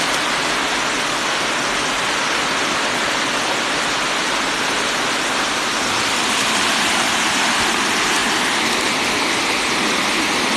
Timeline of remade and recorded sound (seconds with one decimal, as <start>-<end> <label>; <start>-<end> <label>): 0.0-10.6 recorded